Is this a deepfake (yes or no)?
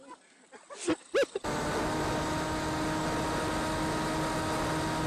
no